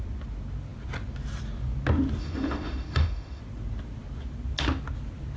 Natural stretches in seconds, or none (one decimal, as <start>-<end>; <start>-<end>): 0.0-2.2; 3.4-5.4